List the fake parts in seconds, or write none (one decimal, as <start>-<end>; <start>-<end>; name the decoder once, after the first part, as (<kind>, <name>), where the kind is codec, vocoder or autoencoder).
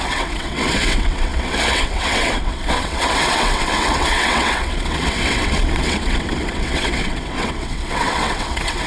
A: 0.0-8.9 (vocoder, WaveNeXt)